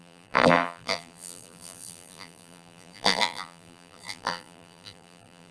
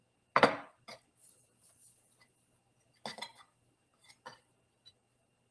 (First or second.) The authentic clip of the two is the second